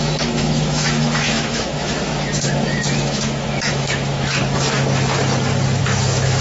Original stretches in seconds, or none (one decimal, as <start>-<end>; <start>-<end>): 4.4-5.8